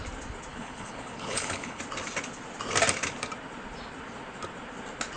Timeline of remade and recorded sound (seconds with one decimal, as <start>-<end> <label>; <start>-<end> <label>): 0.0-0.5 recorded; 0.5-1.8 remade; 1.8-5.2 recorded